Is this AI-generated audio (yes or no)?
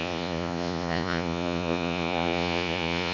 yes